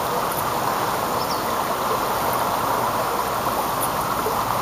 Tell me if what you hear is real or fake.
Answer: real